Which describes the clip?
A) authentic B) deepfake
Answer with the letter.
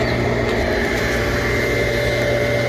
A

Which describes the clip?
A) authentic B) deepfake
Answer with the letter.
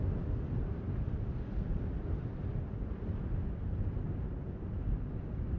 A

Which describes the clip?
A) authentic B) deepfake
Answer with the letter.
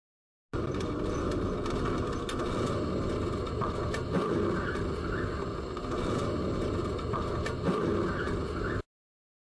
A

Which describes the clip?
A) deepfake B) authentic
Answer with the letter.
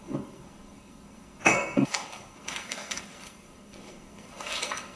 A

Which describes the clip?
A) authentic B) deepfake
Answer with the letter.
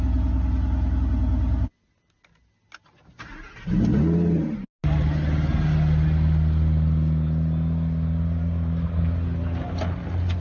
A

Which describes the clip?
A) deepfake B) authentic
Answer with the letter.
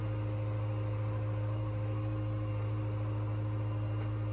B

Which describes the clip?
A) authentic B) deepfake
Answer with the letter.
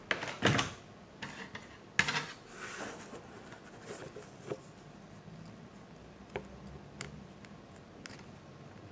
A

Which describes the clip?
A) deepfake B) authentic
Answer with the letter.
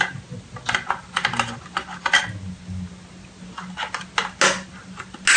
B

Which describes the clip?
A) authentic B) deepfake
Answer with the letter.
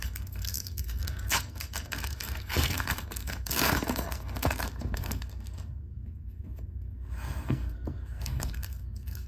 B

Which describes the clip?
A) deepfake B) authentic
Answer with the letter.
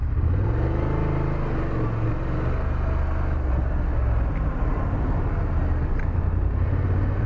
B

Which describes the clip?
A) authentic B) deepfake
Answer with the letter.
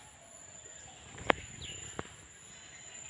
A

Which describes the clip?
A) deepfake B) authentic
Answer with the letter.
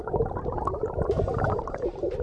B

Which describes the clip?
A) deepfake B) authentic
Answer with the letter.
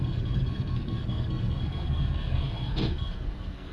A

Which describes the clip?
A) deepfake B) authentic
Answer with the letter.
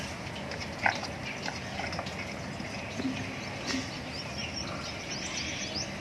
B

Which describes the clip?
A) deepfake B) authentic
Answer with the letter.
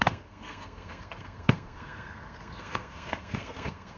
A